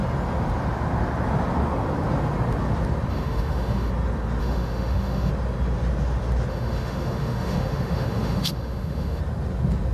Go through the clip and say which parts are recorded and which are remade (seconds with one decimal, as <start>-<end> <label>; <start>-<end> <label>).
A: 0.0-3.1 recorded; 3.1-3.9 remade; 3.9-4.4 recorded; 4.4-5.3 remade; 5.3-6.5 recorded; 6.5-9.2 remade; 9.2-9.9 recorded